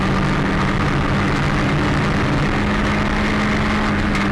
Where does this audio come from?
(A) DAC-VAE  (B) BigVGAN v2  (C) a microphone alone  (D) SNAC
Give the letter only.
C